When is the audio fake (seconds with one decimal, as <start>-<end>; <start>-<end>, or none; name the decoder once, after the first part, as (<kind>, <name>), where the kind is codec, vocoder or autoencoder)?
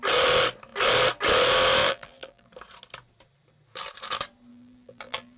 1.8-2.5 (vocoder, BigVGAN v2); 4.5-5.4